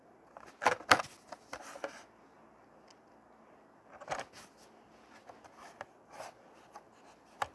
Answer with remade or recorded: recorded